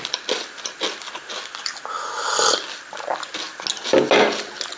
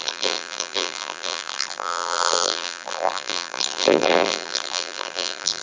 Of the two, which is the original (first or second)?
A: first